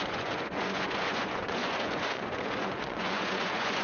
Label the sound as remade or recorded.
remade